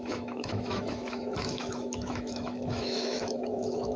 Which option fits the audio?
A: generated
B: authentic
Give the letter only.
A